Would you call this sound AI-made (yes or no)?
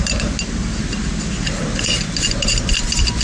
no